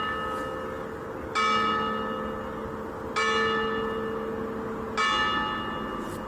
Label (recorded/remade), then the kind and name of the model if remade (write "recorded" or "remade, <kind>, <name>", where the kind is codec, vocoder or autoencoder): recorded